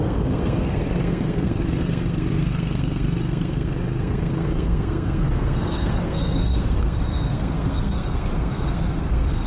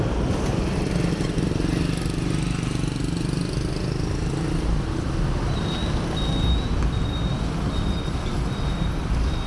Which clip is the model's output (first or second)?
first